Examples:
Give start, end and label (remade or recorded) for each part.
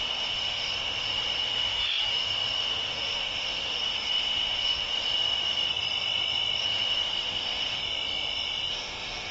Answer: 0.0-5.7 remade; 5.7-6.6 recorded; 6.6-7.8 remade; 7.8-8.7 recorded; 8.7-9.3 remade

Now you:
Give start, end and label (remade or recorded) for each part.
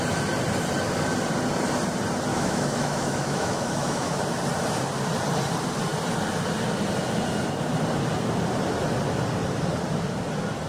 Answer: 0.0-2.3 recorded; 2.3-4.2 remade; 4.2-10.7 recorded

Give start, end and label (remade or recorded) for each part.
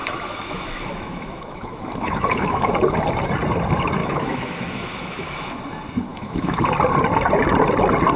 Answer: 0.0-2.7 remade; 2.7-4.0 recorded; 4.0-5.6 remade; 5.6-6.1 recorded; 6.1-6.6 remade; 6.6-8.2 recorded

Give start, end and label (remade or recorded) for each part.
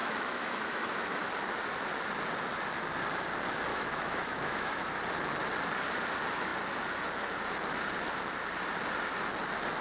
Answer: 0.0-1.3 remade; 1.3-3.7 recorded; 3.7-5.0 remade; 5.0-9.8 recorded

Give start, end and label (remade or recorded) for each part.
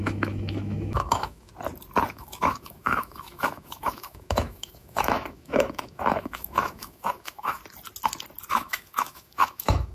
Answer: 0.0-1.5 remade; 1.5-2.1 recorded; 2.1-7.6 remade; 7.6-8.5 recorded; 8.5-9.9 remade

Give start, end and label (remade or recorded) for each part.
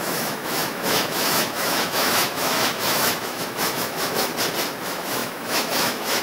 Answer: 0.0-4.3 remade; 4.3-4.8 recorded; 4.8-6.2 remade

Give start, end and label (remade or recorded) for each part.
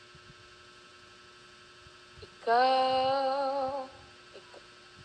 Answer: 0.0-5.0 recorded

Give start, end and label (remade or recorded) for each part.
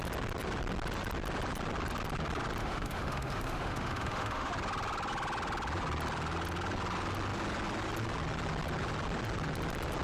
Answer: 0.0-2.6 recorded; 2.6-4.5 remade; 4.5-10.0 recorded